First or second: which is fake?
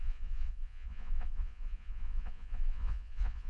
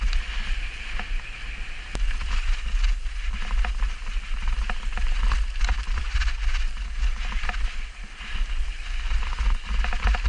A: first